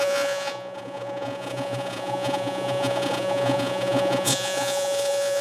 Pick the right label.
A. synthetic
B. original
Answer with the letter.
A